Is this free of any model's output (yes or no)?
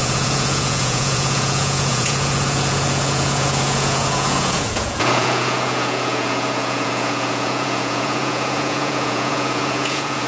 no